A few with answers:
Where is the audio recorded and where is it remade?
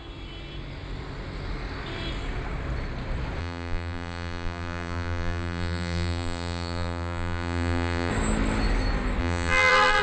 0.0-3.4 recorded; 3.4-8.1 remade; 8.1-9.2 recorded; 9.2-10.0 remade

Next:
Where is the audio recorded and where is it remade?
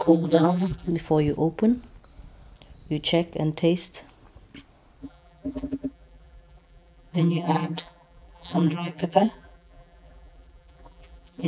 0.0-0.9 remade; 0.9-5.0 recorded; 5.0-11.5 remade